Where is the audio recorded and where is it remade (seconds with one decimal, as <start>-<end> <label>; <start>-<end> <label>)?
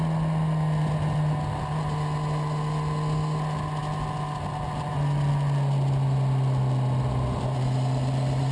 0.0-8.5 recorded